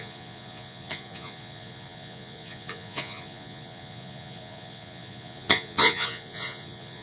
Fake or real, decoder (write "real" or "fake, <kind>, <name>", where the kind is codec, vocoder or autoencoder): fake, vocoder, Vocos